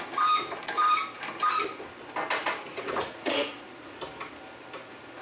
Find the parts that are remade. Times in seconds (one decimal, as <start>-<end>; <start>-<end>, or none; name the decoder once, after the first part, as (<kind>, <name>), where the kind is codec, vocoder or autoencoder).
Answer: 2.4-4.0 (vocoder, Vocos)